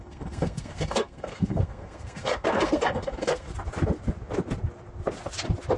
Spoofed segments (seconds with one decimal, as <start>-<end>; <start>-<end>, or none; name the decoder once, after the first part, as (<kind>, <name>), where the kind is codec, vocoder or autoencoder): 0.0-3.5 (codec, SNAC)